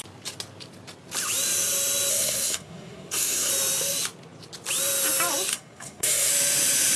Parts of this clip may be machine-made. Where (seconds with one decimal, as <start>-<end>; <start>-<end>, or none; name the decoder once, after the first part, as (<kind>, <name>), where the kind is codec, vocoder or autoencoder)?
2.1-3.5 (codec, SNAC); 5.5-6.3